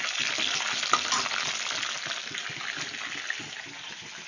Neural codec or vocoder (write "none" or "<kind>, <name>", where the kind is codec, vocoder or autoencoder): none